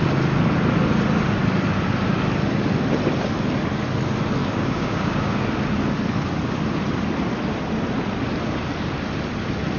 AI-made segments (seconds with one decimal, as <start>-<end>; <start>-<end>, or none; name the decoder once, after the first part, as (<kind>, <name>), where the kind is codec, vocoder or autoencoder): 4.4-5.4 (codec, DAC)